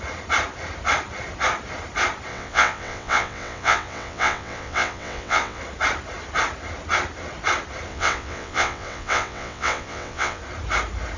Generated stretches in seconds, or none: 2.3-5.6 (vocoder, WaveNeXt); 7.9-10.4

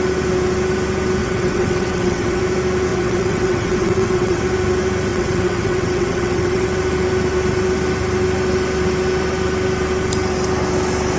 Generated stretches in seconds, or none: 1.2-2.4 (vocoder, WaveNeXt); 2.9-4.4; 5.1-6.7

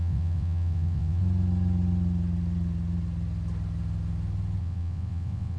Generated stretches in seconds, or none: 0.0-1.2 (vocoder, WaveNeXt); 4.6-5.6

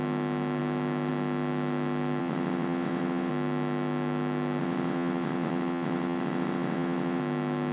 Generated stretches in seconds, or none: 2.2-3.3 (vocoder, WaveNeXt); 4.6-7.2

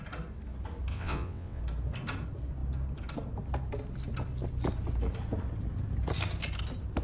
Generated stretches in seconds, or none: 0.9-1.6 (vocoder, WaveNeXt)

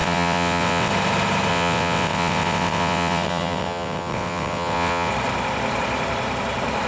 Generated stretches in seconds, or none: 0.0-0.9 (vocoder, WaveNeXt); 1.5-5.1

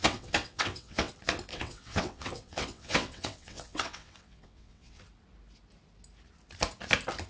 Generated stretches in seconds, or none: 0.0-1.1 (vocoder, WaveNeXt); 1.5-5.0